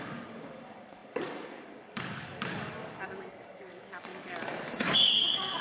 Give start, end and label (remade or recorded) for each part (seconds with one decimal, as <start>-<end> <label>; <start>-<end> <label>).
0.0-5.6 remade